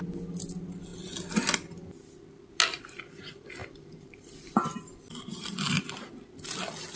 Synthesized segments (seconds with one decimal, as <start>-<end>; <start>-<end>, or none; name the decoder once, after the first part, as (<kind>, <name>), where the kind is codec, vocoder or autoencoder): 3.6-6.1 (vocoder, BigVGAN v2)